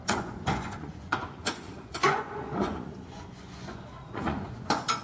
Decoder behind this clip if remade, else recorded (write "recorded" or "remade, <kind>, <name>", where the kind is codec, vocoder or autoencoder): remade, vocoder, Vocos